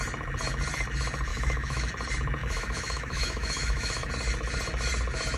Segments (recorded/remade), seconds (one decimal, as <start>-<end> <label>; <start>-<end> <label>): 0.0-1.3 recorded; 1.3-1.9 remade; 1.9-2.4 recorded; 2.4-4.1 remade; 4.1-5.4 recorded